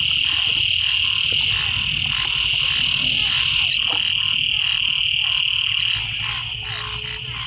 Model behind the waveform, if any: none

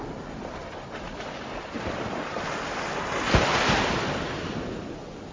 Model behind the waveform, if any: none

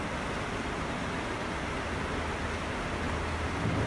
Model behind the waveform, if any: none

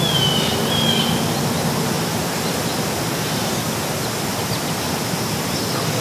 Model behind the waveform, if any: none